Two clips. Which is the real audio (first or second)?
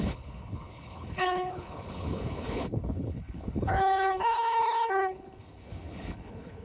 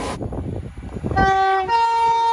second